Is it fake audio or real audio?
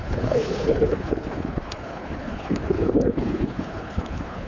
fake